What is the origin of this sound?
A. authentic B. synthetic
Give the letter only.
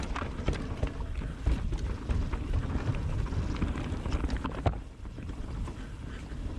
A